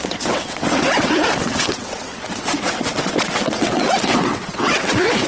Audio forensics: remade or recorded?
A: remade